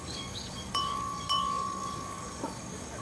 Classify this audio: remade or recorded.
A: remade